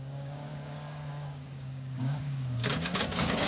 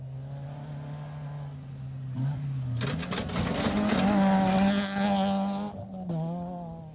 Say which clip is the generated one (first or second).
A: first